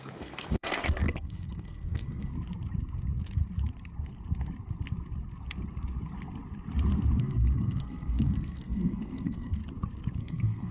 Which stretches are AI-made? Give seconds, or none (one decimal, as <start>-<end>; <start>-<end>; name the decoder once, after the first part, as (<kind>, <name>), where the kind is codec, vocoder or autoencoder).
0.0-2.3 (codec, SNAC); 7.2-9.6; 10.2-10.7

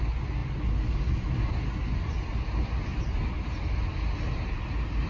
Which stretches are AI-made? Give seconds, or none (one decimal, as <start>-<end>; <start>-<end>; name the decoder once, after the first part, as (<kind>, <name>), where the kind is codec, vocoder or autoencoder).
none